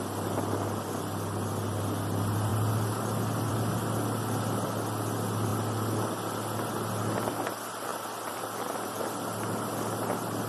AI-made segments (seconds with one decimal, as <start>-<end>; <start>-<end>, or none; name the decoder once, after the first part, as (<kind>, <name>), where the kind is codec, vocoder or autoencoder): 7.9-9.0 (vocoder, BigVGAN v2)